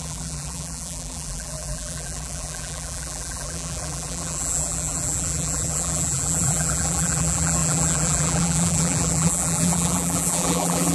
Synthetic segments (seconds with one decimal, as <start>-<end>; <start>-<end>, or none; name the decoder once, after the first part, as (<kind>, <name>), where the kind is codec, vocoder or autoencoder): 0.0-10.9 (vocoder, BigVGAN v2)